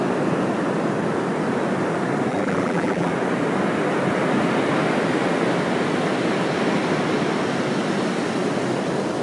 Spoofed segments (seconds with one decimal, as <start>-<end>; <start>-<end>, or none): 2.3-3.1